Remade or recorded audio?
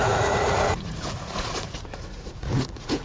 remade